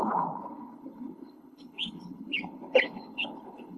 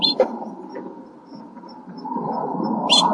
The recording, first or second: second